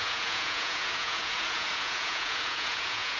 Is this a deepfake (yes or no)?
yes